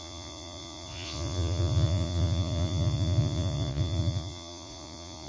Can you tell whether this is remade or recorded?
remade